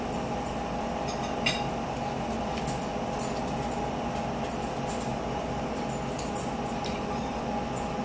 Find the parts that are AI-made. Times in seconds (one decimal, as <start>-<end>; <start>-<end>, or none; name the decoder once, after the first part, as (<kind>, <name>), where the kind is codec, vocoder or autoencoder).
5.1-5.8 (vocoder, BigVGAN v2)